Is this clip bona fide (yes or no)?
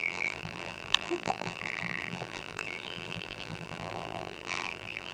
no